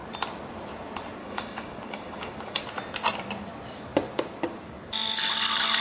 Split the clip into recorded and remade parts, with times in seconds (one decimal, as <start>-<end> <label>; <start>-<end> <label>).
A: 0.0-1.2 recorded; 1.2-2.6 remade; 2.6-5.8 recorded